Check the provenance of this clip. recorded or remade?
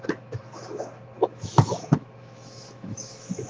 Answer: remade